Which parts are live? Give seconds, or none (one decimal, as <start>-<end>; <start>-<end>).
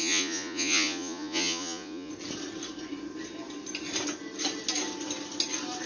2.1-5.9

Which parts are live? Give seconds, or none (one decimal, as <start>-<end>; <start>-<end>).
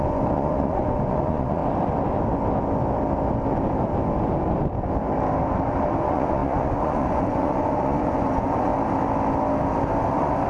1.6-6.0; 8.7-10.0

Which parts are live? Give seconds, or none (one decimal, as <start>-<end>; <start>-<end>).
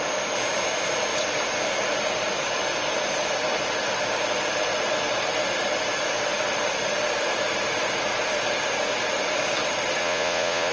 0.0-10.0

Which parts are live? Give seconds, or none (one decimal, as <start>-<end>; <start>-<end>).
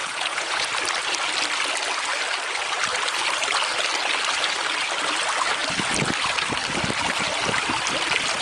0.7-8.4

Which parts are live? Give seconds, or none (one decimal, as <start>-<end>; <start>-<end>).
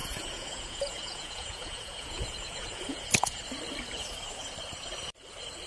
3.4-5.7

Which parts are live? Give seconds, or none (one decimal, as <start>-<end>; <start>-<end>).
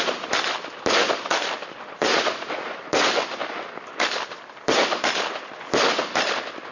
0.0-2.1; 3.1-6.7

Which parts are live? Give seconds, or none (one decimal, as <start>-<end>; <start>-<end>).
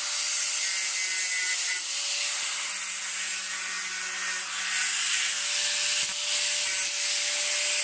0.0-7.8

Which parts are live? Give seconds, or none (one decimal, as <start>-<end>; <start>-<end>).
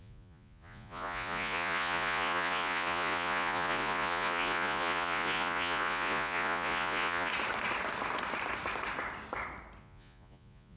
7.3-9.8